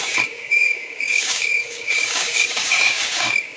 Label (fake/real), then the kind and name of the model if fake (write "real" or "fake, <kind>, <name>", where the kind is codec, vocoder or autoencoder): fake, codec, DAC